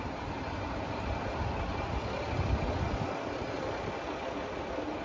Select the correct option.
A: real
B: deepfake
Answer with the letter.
A